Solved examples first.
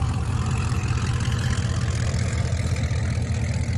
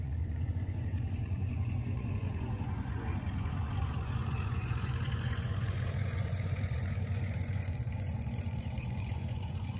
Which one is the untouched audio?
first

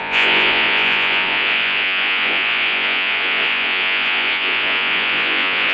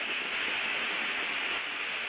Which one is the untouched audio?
second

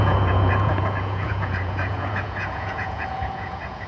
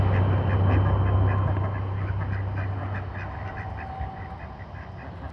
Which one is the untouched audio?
second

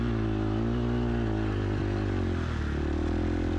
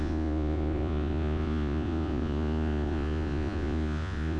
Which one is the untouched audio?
first